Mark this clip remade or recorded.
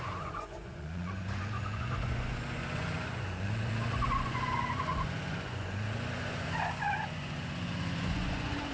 remade